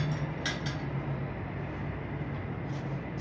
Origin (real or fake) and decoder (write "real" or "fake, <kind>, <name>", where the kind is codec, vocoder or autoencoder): real